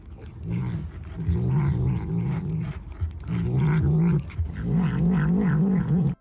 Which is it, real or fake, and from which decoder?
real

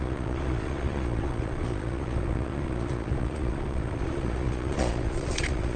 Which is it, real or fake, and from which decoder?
fake, vocoder, Vocos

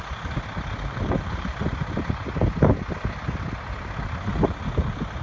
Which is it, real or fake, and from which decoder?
real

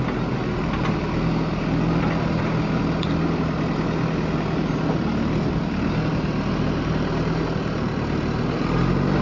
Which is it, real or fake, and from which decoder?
real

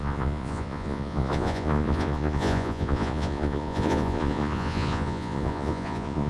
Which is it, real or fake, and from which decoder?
fake, vocoder, Vocos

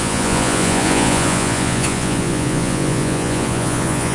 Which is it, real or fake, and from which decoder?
fake, vocoder, Vocos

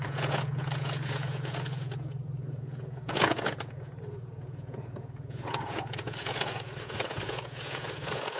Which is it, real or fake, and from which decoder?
fake, vocoder, Vocos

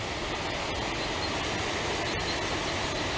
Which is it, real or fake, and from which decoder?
real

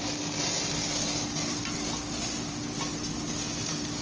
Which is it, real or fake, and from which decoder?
real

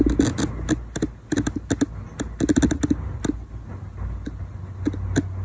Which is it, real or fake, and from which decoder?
real